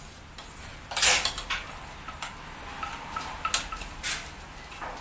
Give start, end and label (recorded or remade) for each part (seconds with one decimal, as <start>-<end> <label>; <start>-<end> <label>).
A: 0.0-5.0 recorded